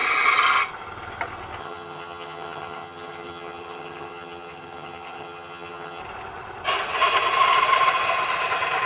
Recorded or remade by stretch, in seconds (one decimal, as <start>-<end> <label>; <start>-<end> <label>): 0.0-1.6 recorded; 1.6-6.0 remade; 6.0-8.9 recorded